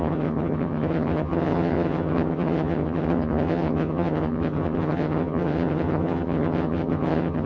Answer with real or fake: fake